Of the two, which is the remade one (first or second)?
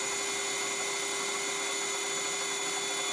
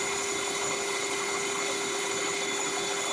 second